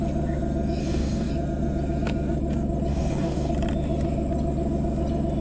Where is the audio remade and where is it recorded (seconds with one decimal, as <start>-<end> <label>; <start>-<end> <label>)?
0.0-0.8 recorded; 0.8-1.3 remade; 1.3-2.9 recorded; 2.9-3.5 remade; 3.5-5.4 recorded